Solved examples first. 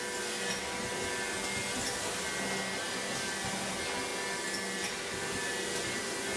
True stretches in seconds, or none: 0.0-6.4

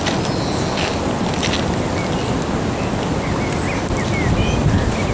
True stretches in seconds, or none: 0.0-5.1

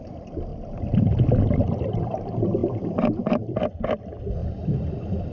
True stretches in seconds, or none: 0.5-1.6